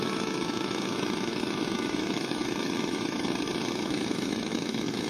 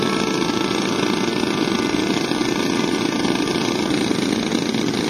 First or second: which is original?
second